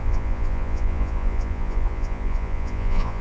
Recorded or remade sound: remade